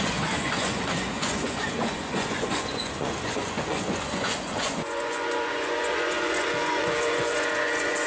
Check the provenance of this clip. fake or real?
fake